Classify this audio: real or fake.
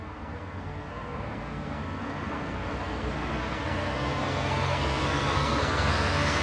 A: fake